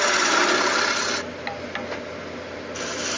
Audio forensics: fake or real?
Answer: real